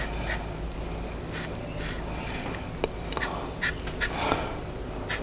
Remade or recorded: recorded